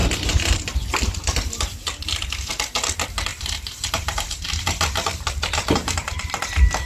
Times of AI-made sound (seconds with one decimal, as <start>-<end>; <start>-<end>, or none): 3.3-6.1